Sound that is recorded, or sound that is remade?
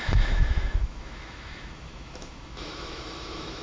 remade